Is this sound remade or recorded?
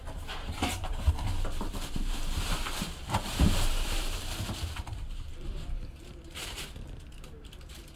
remade